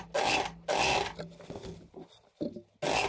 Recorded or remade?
recorded